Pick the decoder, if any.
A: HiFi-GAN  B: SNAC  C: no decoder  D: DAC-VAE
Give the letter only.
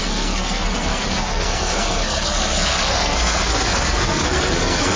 B